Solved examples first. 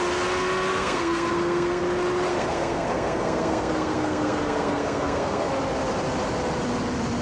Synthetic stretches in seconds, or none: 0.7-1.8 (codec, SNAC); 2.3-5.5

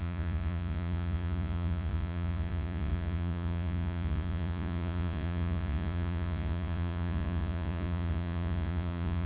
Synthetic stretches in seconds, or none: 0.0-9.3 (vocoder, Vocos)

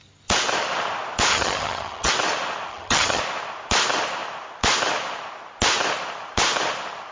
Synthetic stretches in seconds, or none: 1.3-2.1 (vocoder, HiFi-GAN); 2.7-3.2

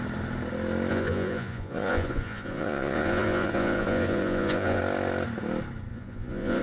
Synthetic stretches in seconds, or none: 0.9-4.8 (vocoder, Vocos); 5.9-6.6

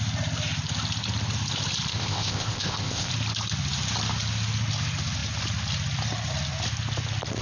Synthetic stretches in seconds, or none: 1.9-3.1 (codec, ZipCodec)